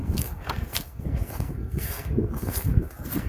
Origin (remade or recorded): remade